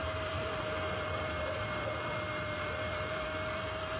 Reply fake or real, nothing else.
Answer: fake